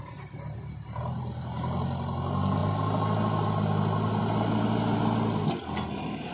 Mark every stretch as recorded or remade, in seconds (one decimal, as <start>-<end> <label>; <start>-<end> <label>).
0.0-6.3 recorded